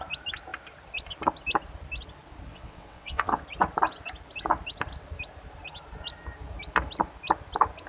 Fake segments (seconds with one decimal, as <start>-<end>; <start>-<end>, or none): 2.5-3.4